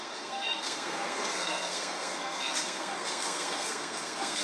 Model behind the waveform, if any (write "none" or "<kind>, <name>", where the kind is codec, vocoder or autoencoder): codec, SNAC